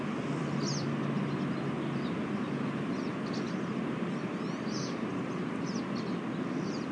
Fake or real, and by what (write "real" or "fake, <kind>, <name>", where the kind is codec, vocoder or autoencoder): real